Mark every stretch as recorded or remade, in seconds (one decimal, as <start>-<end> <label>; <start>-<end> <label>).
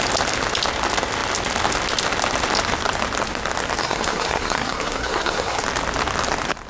0.0-3.8 recorded; 3.8-5.6 remade; 5.6-6.7 recorded